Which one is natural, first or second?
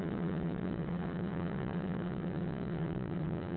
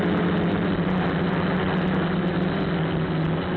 second